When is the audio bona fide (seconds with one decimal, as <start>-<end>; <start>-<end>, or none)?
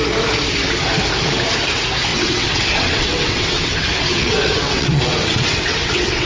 0.0-2.1